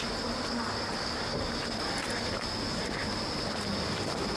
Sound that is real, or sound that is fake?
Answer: real